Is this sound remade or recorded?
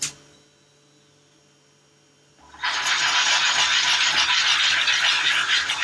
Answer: recorded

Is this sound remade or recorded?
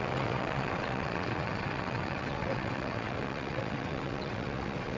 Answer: remade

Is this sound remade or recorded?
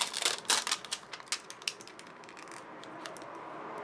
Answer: recorded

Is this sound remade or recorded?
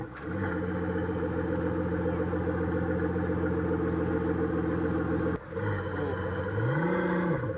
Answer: recorded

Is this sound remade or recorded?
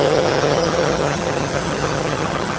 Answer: remade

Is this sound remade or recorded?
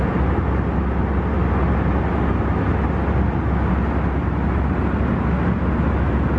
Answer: recorded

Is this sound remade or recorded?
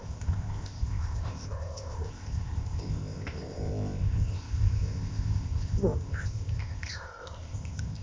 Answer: remade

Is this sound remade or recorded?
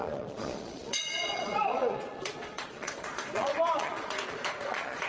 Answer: remade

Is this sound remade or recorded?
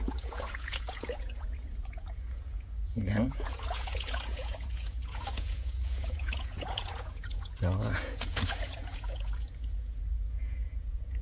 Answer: remade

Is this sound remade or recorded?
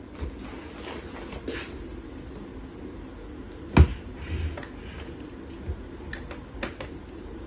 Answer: recorded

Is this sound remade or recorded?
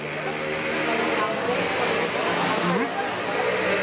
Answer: recorded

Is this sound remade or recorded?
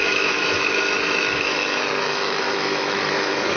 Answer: remade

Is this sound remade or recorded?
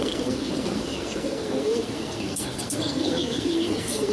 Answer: remade